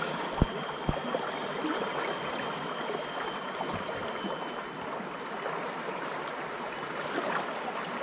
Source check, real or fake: real